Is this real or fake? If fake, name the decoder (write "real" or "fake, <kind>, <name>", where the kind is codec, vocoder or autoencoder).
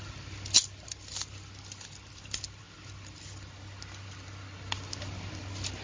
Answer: real